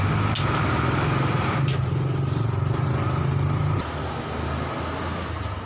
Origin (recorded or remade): recorded